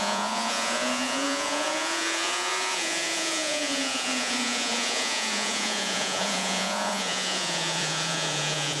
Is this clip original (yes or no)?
no